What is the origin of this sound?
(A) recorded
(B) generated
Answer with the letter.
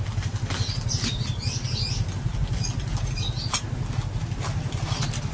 A